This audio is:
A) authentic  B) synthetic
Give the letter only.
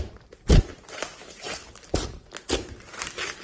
A